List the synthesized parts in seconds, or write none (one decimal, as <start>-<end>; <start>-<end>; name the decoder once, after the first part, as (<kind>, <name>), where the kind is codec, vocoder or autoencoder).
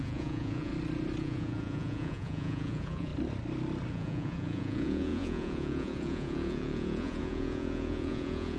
0.0-0.7 (vocoder, Vocos); 1.2-3.1; 3.9-8.6